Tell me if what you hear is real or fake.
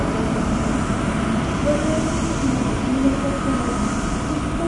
real